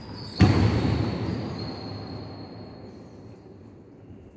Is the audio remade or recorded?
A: recorded